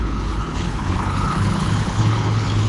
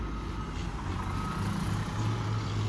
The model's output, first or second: first